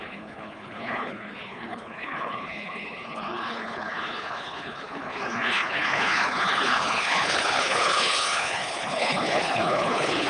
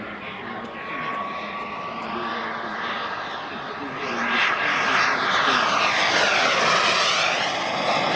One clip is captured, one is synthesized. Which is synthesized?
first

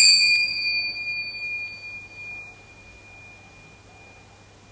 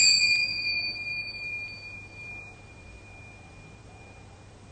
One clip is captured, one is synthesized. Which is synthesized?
second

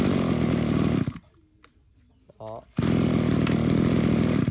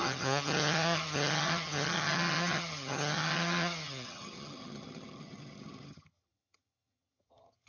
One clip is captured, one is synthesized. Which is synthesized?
second